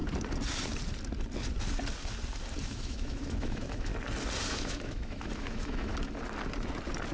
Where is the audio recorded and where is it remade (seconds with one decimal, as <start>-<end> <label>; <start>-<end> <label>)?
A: 0.0-2.6 recorded; 2.6-3.9 remade; 3.9-4.5 recorded; 4.5-5.9 remade; 5.9-7.1 recorded

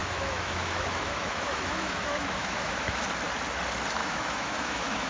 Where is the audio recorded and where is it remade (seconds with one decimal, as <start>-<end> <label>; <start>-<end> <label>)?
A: 0.0-3.0 remade; 3.0-4.0 recorded; 4.0-5.1 remade

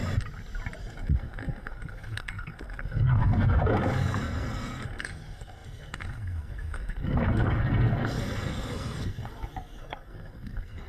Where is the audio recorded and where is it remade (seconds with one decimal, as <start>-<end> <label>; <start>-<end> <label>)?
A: 0.0-0.8 recorded; 0.8-10.9 remade